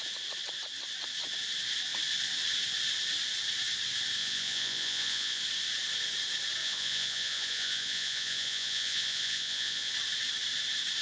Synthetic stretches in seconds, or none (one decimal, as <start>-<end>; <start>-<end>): 4.2-5.4; 6.6-9.9